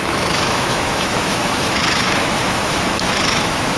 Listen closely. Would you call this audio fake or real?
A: fake